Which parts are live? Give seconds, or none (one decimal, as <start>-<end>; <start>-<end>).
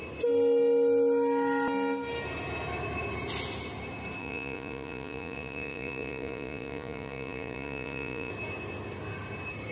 0.0-4.2; 8.3-9.7